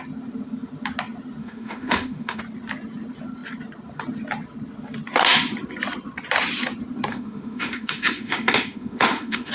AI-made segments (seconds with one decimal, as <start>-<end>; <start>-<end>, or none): 1.4-2.4; 7.1-9.5